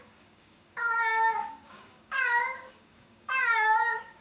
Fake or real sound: fake